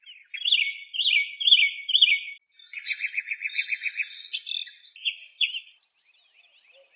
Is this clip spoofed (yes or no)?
no